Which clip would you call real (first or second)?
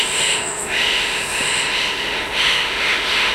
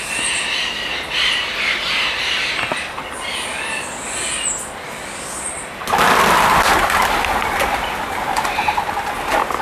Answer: second